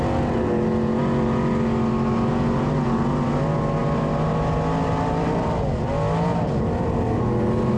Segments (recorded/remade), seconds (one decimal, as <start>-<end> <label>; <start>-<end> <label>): 0.0-7.8 recorded